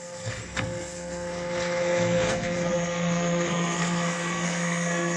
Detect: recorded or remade remade